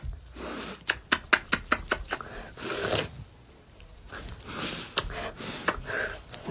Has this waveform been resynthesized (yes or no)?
no